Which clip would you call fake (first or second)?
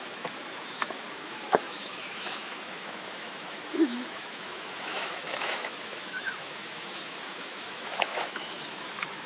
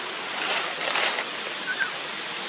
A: first